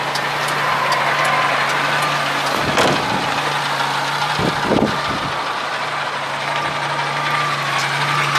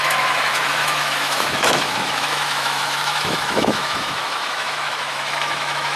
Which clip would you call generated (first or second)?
second